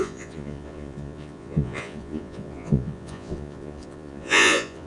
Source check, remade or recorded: remade